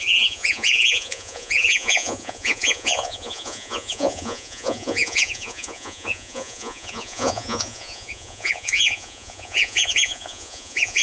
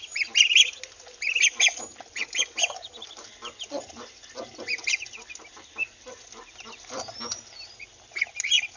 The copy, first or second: first